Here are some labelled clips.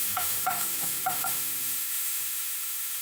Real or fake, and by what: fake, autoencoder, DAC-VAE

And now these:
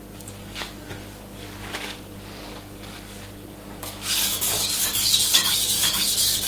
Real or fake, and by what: fake, codec, DAC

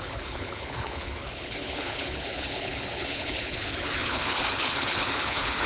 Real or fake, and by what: fake, codec, HILCodec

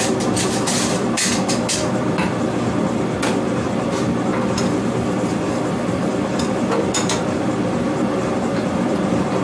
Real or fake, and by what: fake, vocoder, BigVGAN v2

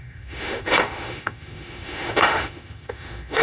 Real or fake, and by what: fake, autoencoder, DAC-VAE